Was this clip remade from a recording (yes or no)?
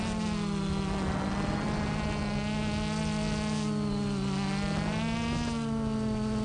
no